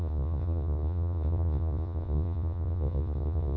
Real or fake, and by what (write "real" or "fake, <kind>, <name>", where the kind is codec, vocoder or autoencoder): fake, vocoder, Vocos